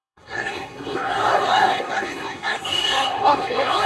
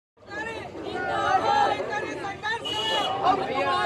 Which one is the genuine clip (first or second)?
second